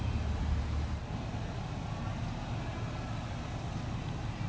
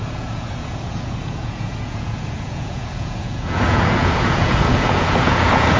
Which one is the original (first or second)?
first